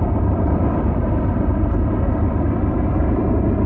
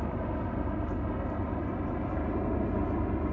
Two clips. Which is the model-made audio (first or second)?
first